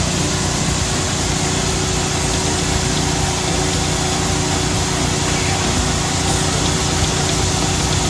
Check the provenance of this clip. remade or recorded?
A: recorded